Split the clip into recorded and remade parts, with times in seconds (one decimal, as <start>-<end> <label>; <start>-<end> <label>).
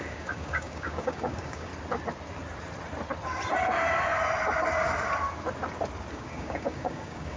0.0-1.7 remade; 1.7-6.1 recorded; 6.1-7.4 remade